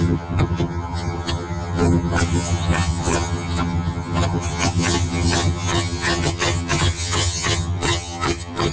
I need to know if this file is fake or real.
fake